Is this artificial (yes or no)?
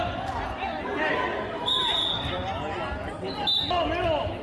no